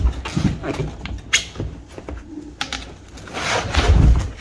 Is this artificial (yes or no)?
no